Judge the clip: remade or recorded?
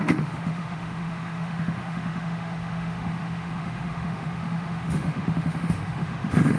remade